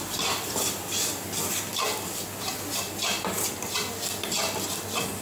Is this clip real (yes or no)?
yes